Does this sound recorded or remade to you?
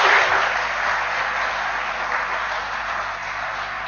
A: recorded